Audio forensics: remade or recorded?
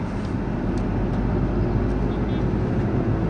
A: recorded